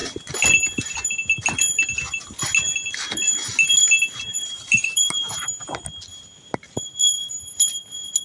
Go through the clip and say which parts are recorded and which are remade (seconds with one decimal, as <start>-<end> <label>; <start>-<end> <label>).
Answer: 0.0-4.3 recorded; 4.3-5.6 remade; 5.6-8.2 recorded